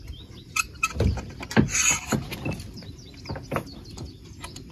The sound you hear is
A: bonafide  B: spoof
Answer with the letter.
A